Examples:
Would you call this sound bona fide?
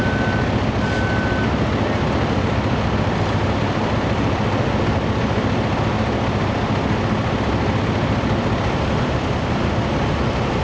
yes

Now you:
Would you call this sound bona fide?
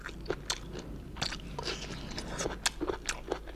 yes